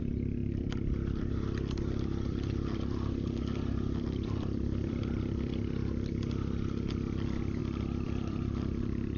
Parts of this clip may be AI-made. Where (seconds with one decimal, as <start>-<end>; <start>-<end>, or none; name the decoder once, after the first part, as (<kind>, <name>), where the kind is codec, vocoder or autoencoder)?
0.4-5.5 (vocoder, BigVGAN v2); 7.6-9.2

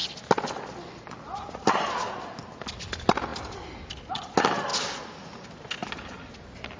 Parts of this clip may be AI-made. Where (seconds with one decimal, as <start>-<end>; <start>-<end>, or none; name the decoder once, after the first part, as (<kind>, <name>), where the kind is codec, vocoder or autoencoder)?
3.3-4.3 (vocoder, BigVGAN v2)

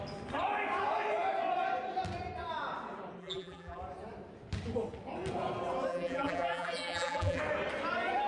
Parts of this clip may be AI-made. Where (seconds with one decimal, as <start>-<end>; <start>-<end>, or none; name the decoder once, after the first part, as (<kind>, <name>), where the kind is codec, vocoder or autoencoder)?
3.2-3.8 (vocoder, BigVGAN v2); 5.9-7.4

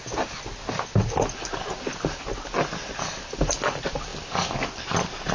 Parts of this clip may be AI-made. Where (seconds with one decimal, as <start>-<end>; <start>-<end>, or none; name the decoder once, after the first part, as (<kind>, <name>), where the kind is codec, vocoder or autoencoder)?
none

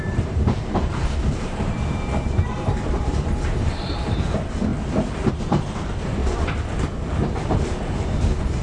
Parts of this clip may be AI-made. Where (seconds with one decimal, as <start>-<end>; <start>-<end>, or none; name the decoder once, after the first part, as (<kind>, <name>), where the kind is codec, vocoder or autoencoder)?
0.0-4.7 (vocoder, BigVGAN v2); 5.3-6.2; 6.8-8.6